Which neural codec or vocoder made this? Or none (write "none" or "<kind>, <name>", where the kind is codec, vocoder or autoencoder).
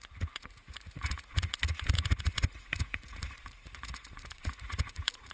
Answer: vocoder, Vocos